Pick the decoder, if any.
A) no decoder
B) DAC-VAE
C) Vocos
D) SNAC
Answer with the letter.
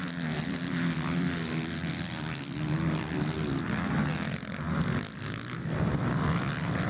A